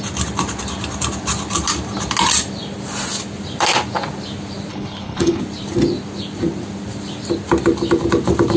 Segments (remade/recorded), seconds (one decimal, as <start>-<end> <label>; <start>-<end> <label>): 0.0-4.7 recorded; 4.7-5.4 remade; 5.4-8.6 recorded